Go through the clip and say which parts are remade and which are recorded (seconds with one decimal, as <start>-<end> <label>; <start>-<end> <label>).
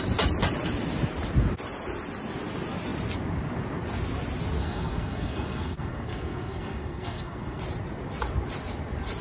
0.0-4.6 recorded; 4.6-7.6 remade; 7.6-9.2 recorded